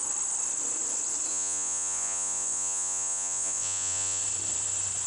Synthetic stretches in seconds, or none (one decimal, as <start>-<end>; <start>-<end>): 1.3-4.2